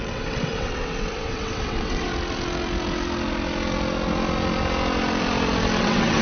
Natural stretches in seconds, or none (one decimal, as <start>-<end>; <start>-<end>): 2.1-5.8

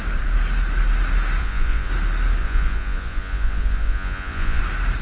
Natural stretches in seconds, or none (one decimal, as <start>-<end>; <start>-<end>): 0.0-1.4; 1.9-2.4; 4.6-5.0

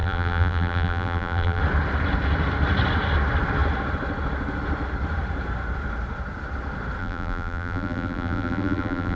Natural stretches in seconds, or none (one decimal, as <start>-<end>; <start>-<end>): 1.6-7.0

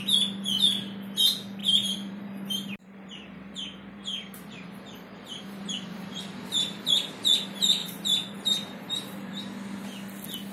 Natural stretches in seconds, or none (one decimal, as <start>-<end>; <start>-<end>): 0.0-1.6; 6.8-7.8; 9.3-10.5

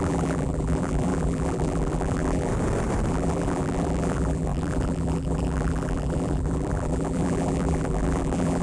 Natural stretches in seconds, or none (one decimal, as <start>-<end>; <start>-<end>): 2.5-3.1

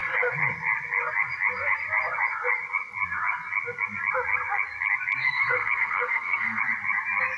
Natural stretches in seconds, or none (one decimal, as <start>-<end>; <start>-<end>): 0.0-5.2; 6.6-7.4

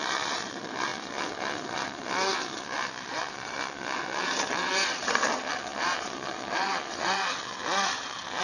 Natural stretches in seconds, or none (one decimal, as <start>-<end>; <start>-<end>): none

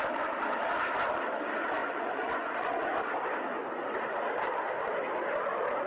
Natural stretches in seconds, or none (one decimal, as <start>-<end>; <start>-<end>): 0.0-1.8; 2.8-5.9